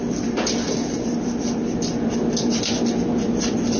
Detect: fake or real real